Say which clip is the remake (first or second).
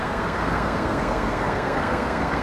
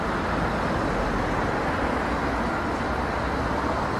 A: first